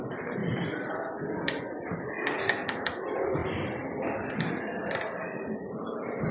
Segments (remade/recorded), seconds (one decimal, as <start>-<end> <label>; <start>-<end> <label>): 0.0-0.4 recorded; 0.4-0.9 remade; 0.9-3.4 recorded; 3.4-5.5 remade; 5.5-6.3 recorded